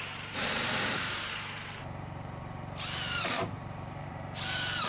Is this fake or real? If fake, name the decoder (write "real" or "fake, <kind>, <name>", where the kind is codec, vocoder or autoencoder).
fake, vocoder, BigVGAN v2